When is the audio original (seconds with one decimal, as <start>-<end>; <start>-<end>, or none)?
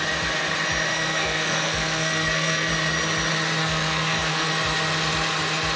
0.0-0.9; 2.7-3.6; 4.5-5.8